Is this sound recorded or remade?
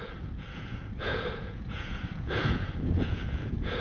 remade